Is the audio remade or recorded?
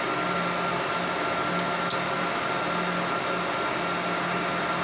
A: recorded